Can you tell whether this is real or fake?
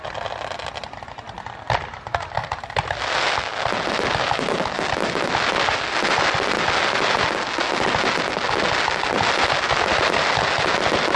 real